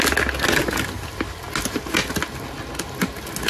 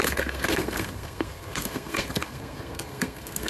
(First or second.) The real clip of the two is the first